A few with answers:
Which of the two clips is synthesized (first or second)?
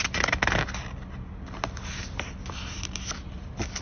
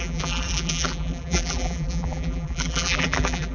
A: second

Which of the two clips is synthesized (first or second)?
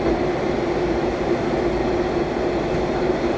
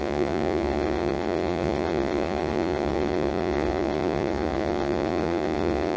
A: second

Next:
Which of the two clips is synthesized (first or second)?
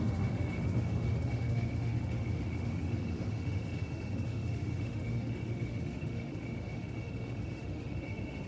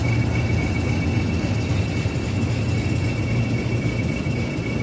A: first